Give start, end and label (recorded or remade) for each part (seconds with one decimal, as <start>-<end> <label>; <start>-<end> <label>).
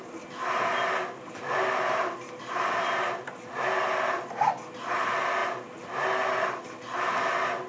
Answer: 0.0-7.7 recorded